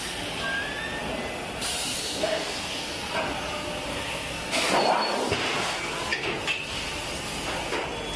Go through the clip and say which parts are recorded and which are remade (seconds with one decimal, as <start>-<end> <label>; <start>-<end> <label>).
0.0-2.0 recorded; 2.0-3.1 remade; 3.1-3.9 recorded; 3.9-4.8 remade; 4.8-8.2 recorded